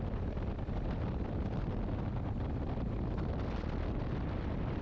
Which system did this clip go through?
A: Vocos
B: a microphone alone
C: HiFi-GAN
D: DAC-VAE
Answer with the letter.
B